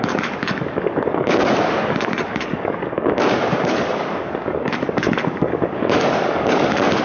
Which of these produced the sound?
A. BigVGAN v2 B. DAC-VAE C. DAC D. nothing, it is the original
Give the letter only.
C